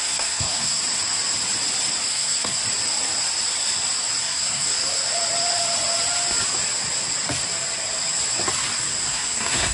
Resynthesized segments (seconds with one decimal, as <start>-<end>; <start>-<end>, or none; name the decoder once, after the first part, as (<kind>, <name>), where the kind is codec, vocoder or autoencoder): 0.0-0.8 (codec, SNAC); 2.1-2.6; 4.2-5.0; 9.1-9.7